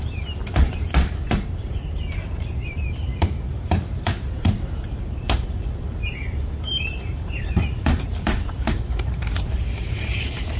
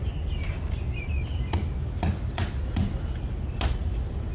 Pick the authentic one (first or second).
second